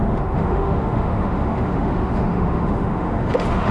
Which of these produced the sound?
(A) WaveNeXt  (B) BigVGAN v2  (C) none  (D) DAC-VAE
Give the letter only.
D